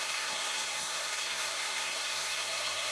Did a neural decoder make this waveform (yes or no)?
yes